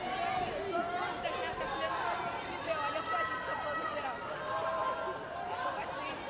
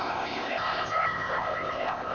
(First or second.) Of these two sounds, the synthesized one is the second